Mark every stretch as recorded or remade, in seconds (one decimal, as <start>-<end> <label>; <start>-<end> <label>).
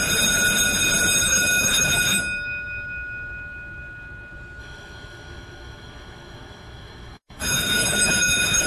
0.0-1.2 recorded; 1.2-2.2 remade; 2.2-4.6 recorded; 4.6-8.7 remade